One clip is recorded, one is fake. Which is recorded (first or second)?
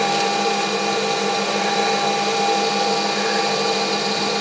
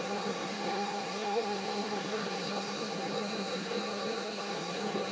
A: first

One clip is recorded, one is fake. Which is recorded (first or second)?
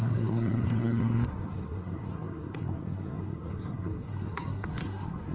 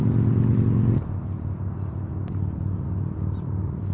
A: second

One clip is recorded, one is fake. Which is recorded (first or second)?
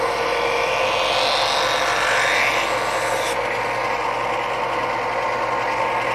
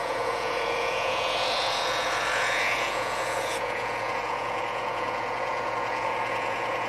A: first